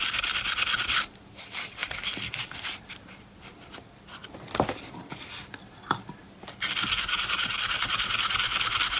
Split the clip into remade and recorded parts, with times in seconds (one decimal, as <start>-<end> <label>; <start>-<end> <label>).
0.0-1.8 recorded; 1.8-5.3 remade; 5.3-9.0 recorded